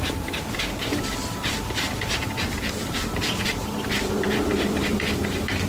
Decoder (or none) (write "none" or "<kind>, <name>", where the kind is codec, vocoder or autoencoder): vocoder, BigVGAN v2